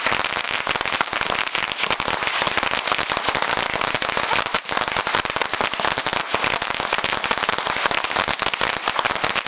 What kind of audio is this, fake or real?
real